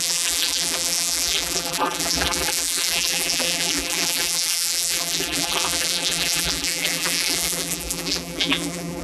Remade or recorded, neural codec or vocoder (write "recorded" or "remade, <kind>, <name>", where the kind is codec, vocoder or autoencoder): remade, vocoder, BigVGAN v2